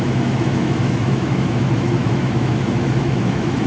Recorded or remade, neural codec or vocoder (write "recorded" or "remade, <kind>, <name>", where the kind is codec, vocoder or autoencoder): remade, autoencoder, DAC-VAE